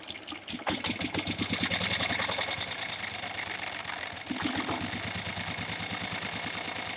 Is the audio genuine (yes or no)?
yes